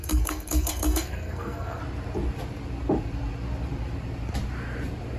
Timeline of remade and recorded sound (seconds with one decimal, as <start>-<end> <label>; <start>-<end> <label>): 0.0-1.8 remade; 1.8-5.2 recorded